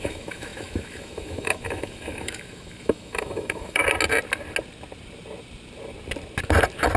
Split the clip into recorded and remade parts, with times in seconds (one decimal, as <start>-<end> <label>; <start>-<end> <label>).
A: 0.0-3.8 remade; 3.8-7.0 recorded